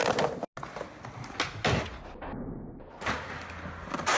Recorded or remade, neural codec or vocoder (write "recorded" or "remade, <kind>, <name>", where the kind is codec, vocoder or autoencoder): recorded